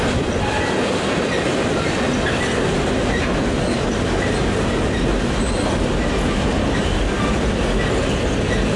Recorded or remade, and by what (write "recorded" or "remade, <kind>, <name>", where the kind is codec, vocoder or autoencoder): recorded